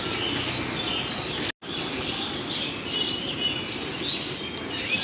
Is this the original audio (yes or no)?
yes